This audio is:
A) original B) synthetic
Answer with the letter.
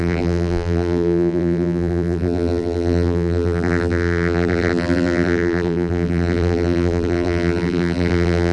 B